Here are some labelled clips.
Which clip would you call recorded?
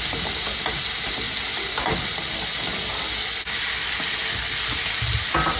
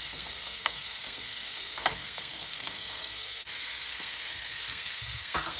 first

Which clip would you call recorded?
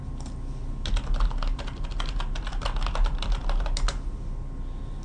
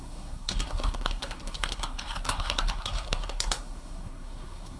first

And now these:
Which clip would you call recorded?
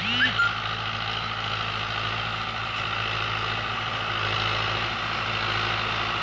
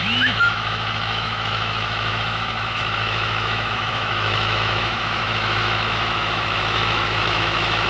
first